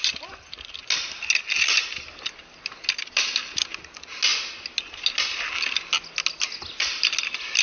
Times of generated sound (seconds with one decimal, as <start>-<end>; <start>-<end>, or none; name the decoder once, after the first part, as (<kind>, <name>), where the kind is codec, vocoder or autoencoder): none

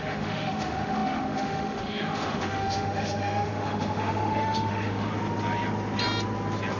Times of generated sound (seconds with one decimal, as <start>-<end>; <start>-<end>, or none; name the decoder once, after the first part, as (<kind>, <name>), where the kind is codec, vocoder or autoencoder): 0.0-5.1 (autoencoder, DAC-VAE)

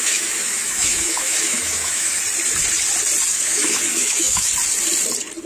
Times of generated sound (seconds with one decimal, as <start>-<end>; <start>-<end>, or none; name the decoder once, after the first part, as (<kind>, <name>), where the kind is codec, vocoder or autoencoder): 0.0-2.2 (autoencoder, DAC-VAE); 3.3-4.5

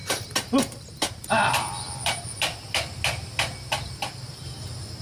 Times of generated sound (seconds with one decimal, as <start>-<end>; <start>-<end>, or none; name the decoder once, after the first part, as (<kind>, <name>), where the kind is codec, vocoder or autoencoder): none

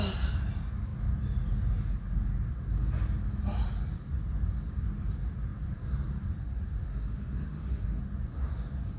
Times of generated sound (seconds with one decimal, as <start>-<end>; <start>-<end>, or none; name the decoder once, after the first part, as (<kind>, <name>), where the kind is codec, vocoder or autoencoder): 6.9-8.0 (autoencoder, DAC-VAE)

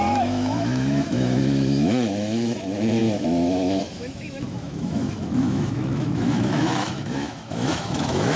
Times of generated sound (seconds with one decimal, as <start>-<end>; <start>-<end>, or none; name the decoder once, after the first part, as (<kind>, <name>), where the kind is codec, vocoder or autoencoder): 0.0-8.4 (autoencoder, DAC-VAE)

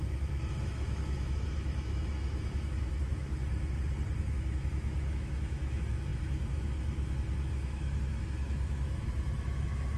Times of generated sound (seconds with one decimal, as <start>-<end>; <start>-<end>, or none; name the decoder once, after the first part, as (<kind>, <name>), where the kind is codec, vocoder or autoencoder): 0.0-3.4 (autoencoder, DAC-VAE); 4.2-10.0